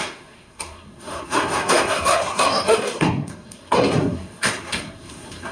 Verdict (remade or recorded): remade